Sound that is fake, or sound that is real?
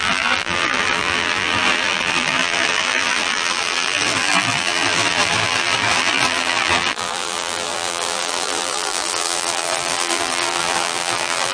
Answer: fake